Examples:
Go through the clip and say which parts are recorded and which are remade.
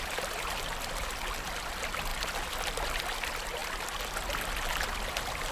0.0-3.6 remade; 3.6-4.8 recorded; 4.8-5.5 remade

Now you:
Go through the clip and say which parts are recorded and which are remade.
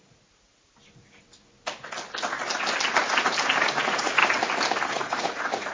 0.0-0.7 remade; 0.7-3.6 recorded; 3.6-4.2 remade; 4.2-4.9 recorded; 4.9-5.7 remade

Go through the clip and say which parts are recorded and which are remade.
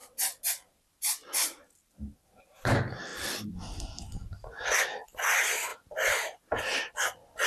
0.0-3.1 recorded; 3.1-4.8 remade; 4.8-7.5 recorded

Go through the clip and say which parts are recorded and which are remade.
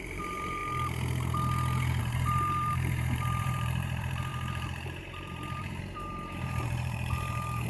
0.0-0.6 remade; 0.6-2.0 recorded; 2.0-7.7 remade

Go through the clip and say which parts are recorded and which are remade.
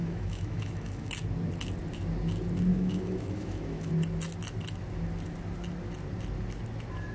0.0-1.1 remade; 1.1-2.7 recorded; 2.7-3.9 remade; 3.9-7.1 recorded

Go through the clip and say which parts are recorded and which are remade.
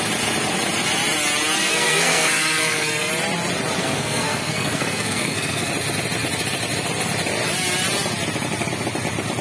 0.0-1.6 recorded; 1.6-3.1 remade; 3.1-3.8 recorded; 3.8-5.7 remade; 5.7-9.4 recorded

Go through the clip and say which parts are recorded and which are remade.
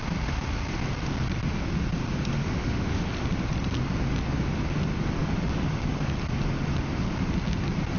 0.0-2.4 recorded; 2.4-3.1 remade; 3.1-8.0 recorded